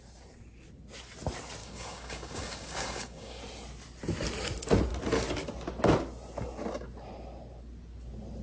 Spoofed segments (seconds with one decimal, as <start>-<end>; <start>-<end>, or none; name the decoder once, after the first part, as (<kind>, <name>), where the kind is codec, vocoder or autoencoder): 1.6-3.4 (codec, DAC)